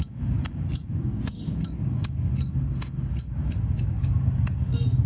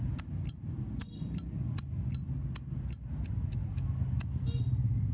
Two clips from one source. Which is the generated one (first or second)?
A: first